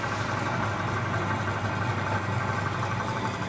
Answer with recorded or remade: recorded